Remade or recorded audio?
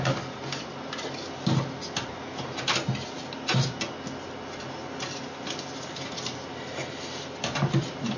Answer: recorded